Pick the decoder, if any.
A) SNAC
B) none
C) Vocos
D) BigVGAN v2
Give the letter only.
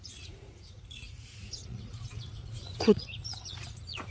C